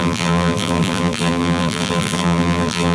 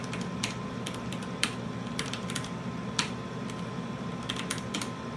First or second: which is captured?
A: second